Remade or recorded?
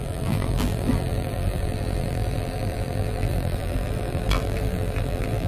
remade